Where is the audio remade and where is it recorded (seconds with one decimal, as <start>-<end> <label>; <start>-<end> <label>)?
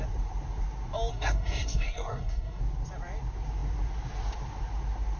0.0-1.1 recorded; 1.1-2.6 remade; 2.6-5.2 recorded